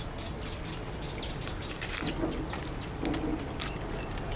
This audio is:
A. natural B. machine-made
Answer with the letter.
A